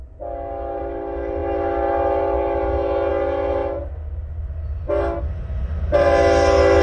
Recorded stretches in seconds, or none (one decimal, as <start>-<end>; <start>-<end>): 0.0-6.8

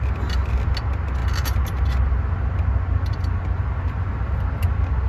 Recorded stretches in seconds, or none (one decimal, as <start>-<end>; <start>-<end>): 0.0-5.1